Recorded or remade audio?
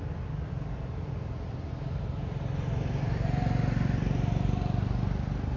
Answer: recorded